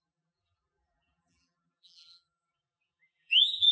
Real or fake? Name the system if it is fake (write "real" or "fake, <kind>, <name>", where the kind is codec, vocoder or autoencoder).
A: fake, vocoder, BigVGAN v2